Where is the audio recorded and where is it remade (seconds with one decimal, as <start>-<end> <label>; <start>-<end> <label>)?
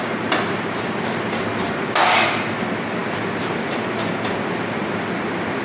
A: 0.0-5.6 recorded